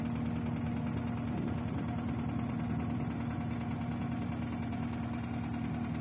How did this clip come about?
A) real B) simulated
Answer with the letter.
A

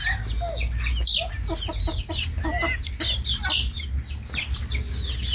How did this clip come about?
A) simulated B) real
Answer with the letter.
B